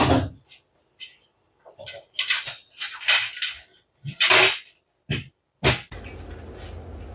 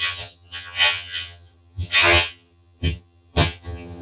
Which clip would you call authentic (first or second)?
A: first